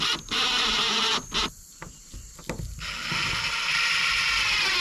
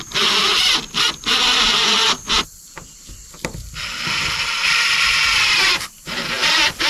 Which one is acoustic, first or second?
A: first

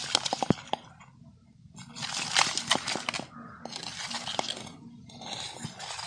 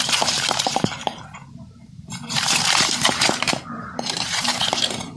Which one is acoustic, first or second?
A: first